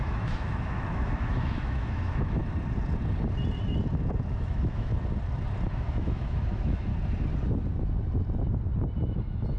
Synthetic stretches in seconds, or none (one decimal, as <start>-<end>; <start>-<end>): 0.0-2.4; 4.3-4.9; 5.7-6.9; 9.0-9.6